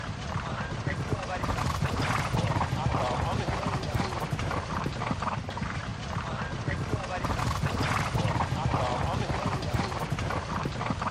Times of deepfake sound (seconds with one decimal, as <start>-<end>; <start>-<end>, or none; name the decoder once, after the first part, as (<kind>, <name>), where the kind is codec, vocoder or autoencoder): 0.0-5.9 (vocoder, BigVGAN v2); 8.3-8.9; 9.4-11.1